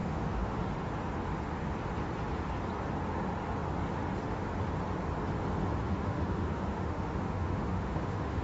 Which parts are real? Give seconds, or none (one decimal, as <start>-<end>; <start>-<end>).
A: 0.6-5.8